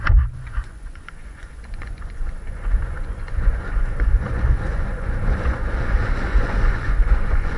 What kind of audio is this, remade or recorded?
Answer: remade